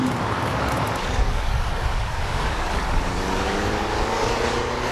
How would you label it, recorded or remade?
remade